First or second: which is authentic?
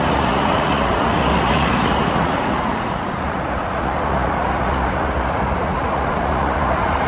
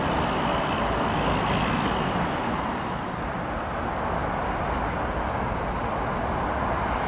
second